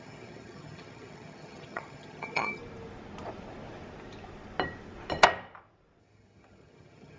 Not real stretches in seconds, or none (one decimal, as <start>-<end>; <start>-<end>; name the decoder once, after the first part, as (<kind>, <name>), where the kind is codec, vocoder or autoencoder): 0.0-2.6 (vocoder, HiFi-GAN); 6.0-7.2